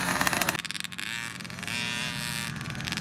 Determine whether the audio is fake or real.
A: real